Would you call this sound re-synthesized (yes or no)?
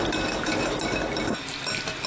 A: no